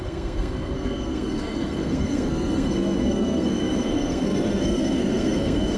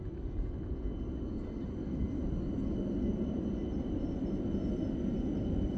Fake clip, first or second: first